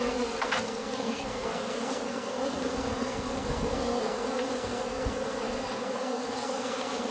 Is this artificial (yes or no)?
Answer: yes